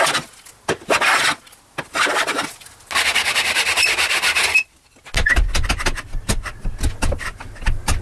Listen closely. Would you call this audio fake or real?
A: real